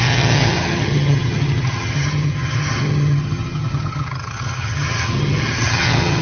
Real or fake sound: fake